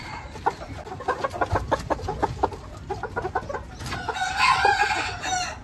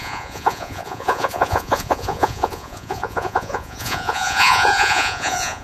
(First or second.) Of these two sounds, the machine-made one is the second